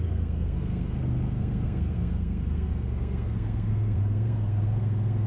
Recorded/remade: remade